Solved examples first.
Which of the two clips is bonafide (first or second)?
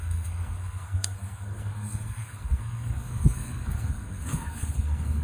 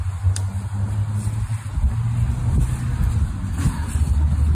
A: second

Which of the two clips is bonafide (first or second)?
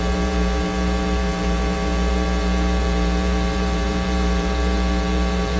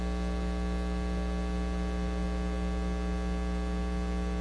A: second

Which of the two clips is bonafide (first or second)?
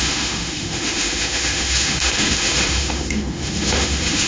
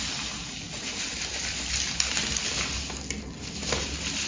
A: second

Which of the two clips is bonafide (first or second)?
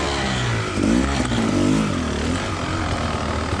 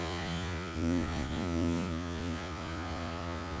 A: first